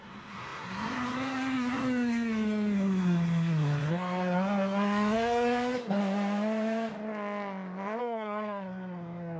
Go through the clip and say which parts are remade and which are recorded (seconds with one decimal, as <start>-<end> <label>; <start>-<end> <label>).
0.0-6.0 remade; 6.0-8.0 recorded; 8.0-9.4 remade

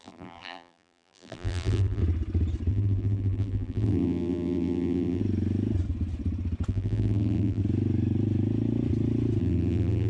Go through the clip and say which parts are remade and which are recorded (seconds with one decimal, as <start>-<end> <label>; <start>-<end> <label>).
0.0-2.0 remade; 2.0-2.7 recorded; 2.7-5.2 remade; 5.2-6.7 recorded; 6.7-7.6 remade; 7.6-9.4 recorded; 9.4-10.1 remade

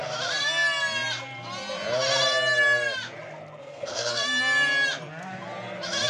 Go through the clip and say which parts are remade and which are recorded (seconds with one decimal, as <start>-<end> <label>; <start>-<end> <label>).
0.0-3.6 recorded; 3.6-4.2 remade; 4.2-6.1 recorded